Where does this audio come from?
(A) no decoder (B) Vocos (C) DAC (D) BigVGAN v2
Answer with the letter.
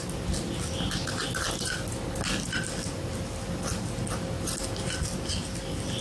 A